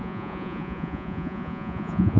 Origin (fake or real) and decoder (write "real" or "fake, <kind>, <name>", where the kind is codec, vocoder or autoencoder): fake, vocoder, Vocos